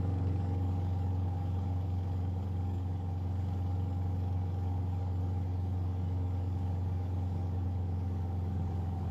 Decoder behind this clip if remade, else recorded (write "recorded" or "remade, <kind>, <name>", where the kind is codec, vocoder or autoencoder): remade, codec, DAC